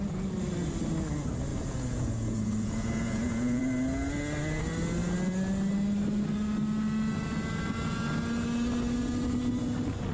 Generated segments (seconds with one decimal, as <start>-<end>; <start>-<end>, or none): 1.5-3.6